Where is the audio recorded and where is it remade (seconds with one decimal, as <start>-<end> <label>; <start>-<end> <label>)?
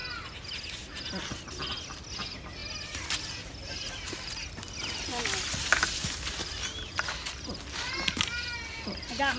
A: 0.0-3.6 recorded; 3.6-4.2 remade; 4.2-9.4 recorded